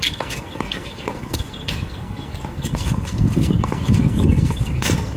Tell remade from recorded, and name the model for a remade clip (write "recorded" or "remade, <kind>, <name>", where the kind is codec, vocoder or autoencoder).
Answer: remade, codec, SNAC